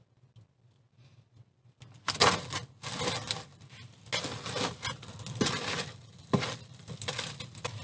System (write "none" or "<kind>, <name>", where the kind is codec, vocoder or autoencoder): none